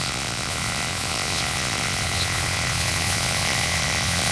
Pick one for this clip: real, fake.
fake